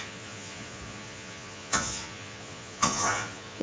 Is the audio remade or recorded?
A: remade